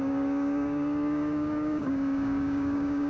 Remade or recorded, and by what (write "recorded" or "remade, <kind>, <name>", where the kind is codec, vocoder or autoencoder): remade, codec, DAC